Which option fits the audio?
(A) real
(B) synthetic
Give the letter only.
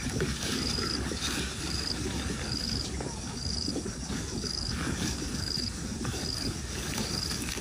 B